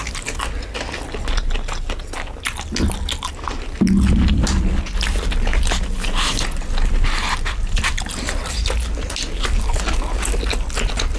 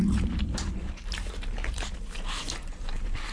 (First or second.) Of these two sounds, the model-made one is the second